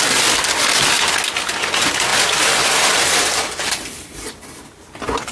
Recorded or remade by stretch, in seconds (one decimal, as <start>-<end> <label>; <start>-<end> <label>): 0.0-5.3 recorded